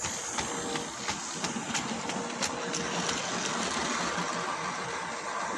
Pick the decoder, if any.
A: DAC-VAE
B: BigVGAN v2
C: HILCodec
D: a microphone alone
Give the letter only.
D